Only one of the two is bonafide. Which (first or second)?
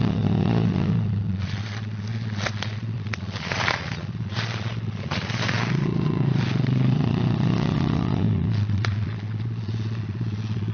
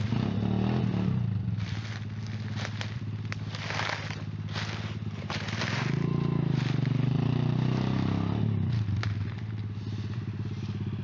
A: second